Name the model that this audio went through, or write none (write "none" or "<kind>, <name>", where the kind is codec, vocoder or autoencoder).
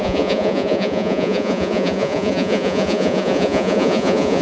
vocoder, Vocos